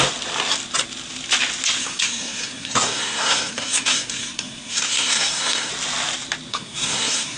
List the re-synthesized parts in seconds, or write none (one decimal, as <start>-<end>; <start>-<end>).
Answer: 1.8-5.7; 6.5-7.4